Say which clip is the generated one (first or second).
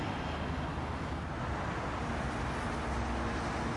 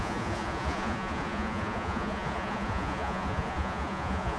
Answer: second